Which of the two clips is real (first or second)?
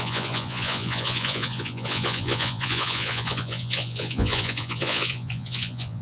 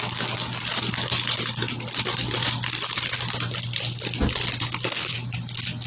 second